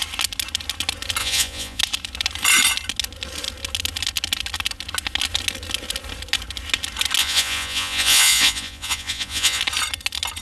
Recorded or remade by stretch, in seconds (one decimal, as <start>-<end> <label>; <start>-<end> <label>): 0.0-1.2 recorded; 1.2-1.8 remade; 1.8-7.2 recorded; 7.2-9.6 remade; 9.6-10.4 recorded